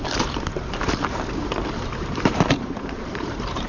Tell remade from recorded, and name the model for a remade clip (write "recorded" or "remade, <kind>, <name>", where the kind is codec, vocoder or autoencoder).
remade, vocoder, BigVGAN v2